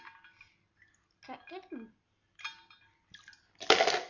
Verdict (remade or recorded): recorded